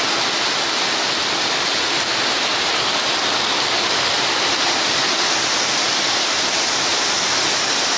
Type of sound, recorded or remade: recorded